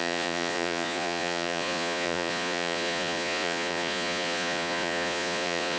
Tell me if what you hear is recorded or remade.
remade